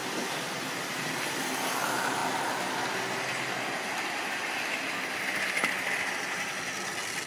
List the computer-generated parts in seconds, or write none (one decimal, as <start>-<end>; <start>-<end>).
none